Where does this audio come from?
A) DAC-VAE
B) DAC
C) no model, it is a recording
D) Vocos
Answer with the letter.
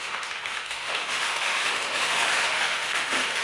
A